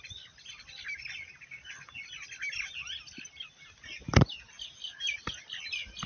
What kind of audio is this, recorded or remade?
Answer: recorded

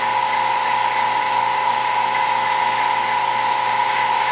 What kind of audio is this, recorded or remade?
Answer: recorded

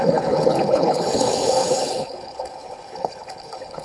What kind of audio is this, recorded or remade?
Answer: remade